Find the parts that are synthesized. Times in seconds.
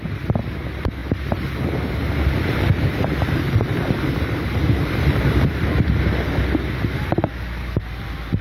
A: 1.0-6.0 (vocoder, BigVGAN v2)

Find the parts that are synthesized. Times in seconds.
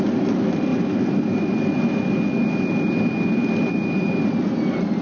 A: none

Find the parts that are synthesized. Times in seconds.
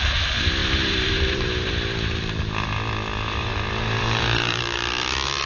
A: 0.6-1.7 (vocoder, BigVGAN v2); 3.4-4.6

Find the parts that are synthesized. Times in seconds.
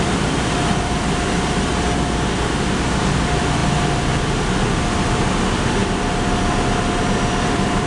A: 0.0-1.7 (vocoder, BigVGAN v2); 3.0-3.6; 5.0-5.8; 7.5-7.9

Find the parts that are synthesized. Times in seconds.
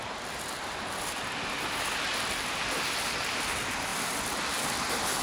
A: none